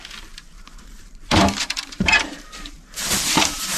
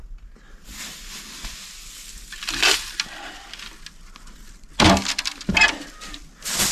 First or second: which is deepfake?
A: first